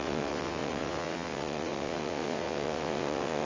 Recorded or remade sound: remade